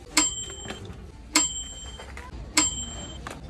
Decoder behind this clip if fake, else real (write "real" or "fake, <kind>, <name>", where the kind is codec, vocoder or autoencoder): real